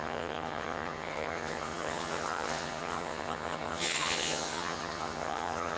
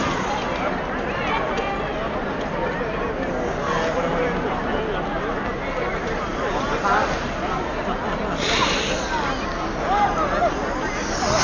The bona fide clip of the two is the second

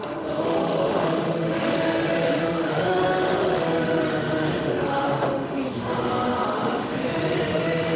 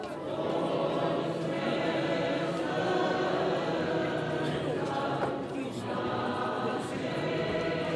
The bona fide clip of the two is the second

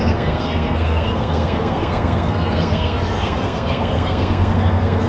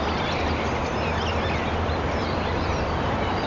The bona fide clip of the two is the second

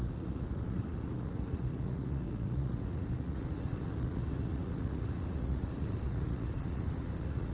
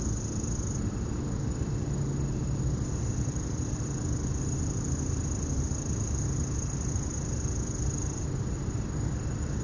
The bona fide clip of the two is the second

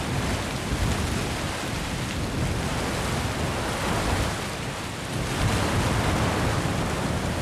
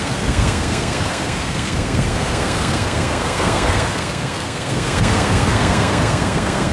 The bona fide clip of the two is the first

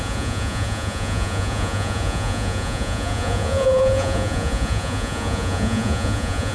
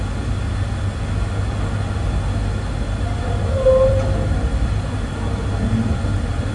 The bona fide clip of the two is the second